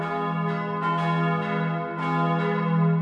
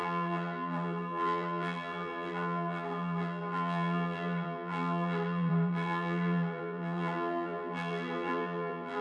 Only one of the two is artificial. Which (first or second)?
second